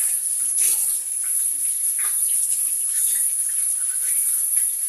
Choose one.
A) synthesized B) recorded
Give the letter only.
B